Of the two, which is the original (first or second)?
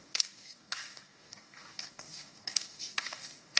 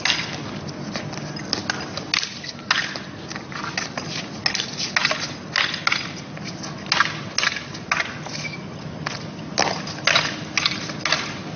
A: second